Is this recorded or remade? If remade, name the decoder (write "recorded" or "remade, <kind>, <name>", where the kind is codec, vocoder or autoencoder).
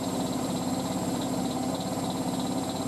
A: recorded